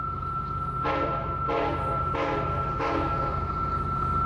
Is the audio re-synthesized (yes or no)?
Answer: no